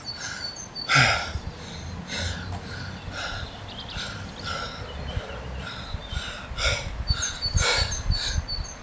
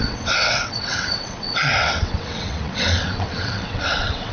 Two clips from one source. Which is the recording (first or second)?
first